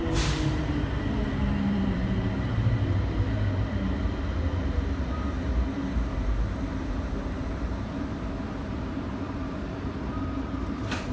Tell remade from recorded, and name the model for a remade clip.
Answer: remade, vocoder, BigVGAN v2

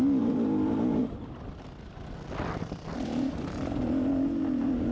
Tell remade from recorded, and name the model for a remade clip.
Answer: recorded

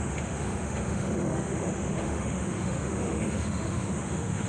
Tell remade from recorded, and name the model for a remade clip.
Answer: remade, autoencoder, DAC-VAE